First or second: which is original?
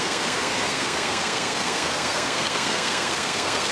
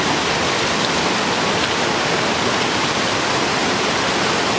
second